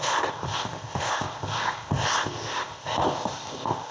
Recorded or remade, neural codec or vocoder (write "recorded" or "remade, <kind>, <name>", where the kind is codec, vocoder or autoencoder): remade, codec, ZipCodec